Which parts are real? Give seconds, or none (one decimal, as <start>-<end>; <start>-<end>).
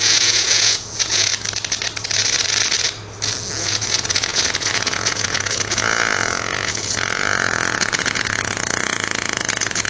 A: 1.3-3.6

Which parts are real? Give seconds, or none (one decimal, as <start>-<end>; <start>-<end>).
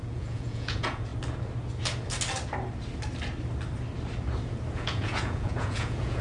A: 1.1-4.7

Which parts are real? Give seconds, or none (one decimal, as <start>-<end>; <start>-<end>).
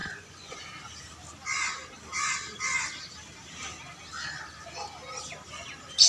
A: 0.6-6.1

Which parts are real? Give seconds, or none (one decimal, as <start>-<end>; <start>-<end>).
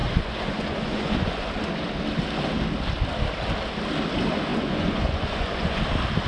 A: 1.5-4.5; 5.8-6.3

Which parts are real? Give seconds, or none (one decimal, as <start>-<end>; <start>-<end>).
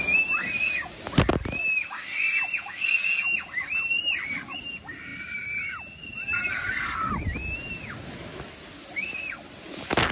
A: 0.0-10.1